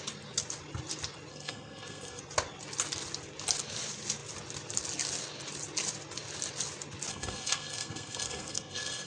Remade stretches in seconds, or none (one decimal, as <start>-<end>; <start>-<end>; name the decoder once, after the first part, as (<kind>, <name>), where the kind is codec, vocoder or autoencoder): 1.3-2.2 (codec, SNAC); 7.1-9.1